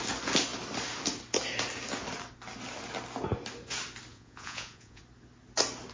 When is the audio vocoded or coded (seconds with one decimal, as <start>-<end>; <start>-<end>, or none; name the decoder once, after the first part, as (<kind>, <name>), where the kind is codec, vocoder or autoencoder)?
4.1-5.0 (vocoder, Vocos)